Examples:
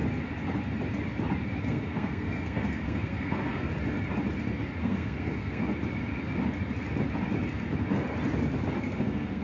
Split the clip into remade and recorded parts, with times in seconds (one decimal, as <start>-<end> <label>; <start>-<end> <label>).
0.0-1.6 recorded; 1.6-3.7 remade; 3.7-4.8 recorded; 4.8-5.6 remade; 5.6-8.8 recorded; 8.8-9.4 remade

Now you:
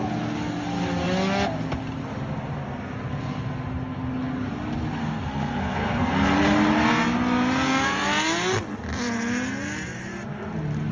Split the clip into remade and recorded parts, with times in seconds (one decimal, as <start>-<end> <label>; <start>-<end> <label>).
0.0-5.0 recorded; 5.0-6.4 remade; 6.4-10.9 recorded

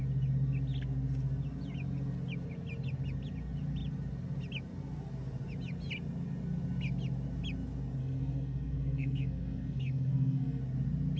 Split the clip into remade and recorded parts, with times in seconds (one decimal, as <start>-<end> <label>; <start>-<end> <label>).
0.0-8.0 recorded; 8.0-10.6 remade; 10.6-11.2 recorded

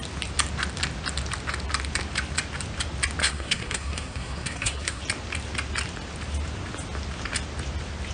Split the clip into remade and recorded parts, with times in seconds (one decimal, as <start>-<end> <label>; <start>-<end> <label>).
0.0-3.2 recorded; 3.2-5.0 remade; 5.0-8.1 recorded

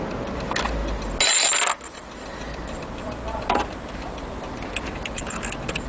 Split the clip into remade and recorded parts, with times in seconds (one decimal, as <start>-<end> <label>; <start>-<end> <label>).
0.0-5.9 recorded